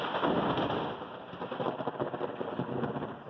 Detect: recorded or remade recorded